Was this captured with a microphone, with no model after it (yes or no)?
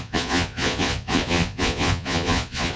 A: no